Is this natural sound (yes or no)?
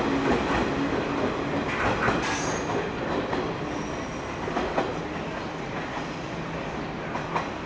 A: yes